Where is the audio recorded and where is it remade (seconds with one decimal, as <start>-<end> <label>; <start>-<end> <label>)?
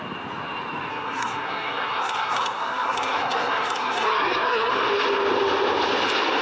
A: 0.0-0.9 recorded; 0.9-4.7 remade; 4.7-6.4 recorded